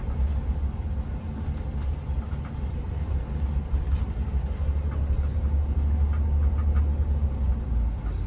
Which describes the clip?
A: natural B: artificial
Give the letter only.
A